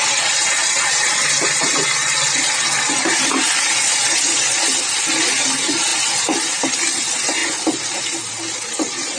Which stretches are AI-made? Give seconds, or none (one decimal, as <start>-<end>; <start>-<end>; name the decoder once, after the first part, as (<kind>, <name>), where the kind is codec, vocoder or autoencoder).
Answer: none